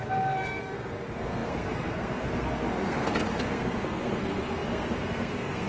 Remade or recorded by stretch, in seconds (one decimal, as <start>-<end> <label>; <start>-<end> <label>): 0.0-5.7 remade